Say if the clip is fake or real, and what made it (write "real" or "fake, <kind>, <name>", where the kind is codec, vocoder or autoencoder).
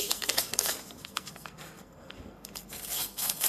fake, codec, SNAC